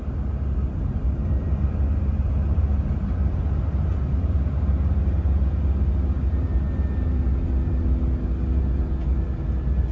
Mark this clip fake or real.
real